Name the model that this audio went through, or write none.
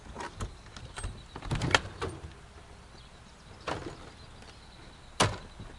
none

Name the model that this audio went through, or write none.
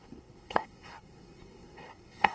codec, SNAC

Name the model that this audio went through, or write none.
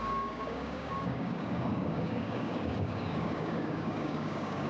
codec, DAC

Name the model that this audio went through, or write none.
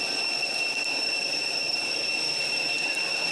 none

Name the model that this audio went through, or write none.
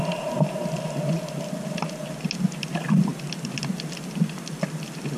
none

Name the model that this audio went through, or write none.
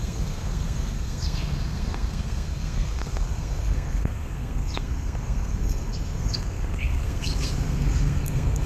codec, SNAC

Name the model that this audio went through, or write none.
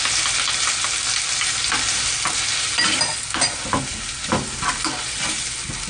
none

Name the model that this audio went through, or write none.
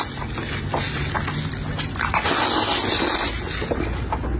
none